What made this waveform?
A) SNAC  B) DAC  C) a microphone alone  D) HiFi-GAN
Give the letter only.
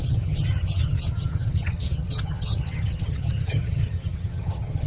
D